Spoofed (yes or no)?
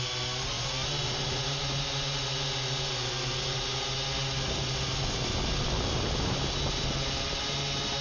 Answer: no